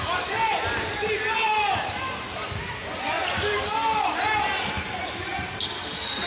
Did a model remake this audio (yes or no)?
no